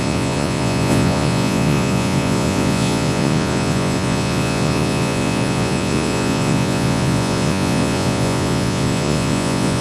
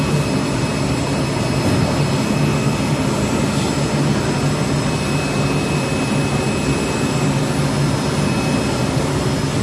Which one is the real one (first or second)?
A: second